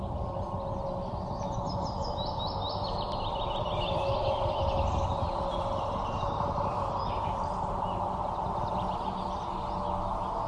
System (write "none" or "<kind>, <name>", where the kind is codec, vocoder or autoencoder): none